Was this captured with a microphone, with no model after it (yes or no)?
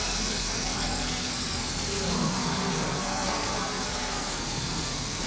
no